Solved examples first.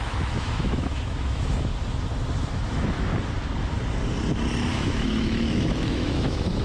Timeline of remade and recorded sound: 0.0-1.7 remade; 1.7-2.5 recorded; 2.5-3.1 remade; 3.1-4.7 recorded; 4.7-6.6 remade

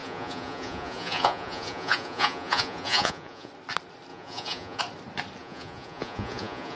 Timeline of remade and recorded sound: 0.0-3.5 remade; 3.5-4.1 recorded; 4.1-4.8 remade; 4.8-5.4 recorded; 5.4-6.8 remade

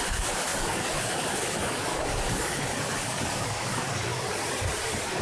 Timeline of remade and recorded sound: 0.0-4.1 remade; 4.1-5.2 recorded

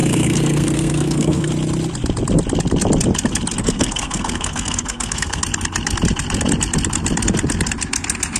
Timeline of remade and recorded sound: 0.0-1.5 remade; 1.5-3.6 recorded; 3.6-5.4 remade; 5.4-8.4 recorded